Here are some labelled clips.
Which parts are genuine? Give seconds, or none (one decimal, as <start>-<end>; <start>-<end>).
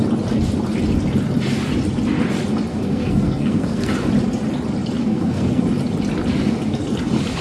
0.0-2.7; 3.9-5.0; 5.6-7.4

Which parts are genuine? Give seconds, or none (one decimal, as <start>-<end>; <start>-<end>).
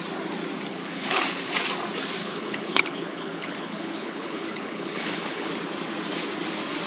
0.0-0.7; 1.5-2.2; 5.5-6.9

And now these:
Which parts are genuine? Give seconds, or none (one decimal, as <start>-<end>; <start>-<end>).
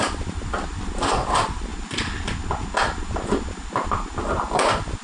1.7-4.2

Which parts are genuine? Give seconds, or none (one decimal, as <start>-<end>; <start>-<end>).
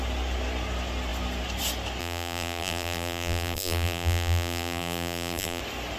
0.0-2.0; 5.6-6.0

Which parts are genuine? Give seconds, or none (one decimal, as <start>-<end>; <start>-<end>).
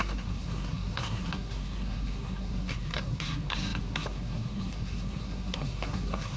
none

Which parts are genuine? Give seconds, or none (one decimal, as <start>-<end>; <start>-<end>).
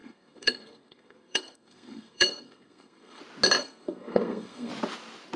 3.2-3.6; 4.7-5.4